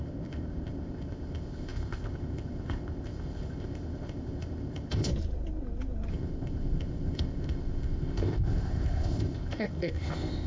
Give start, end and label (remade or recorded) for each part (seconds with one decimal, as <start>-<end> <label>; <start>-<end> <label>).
0.0-5.1 remade; 5.1-6.1 recorded; 6.1-10.5 remade